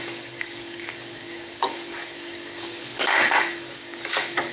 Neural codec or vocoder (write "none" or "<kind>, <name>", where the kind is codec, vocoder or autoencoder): codec, DAC